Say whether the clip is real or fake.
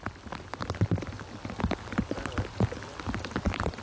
real